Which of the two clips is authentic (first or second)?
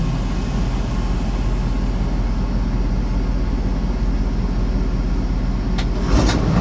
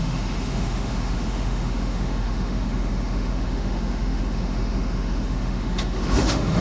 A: first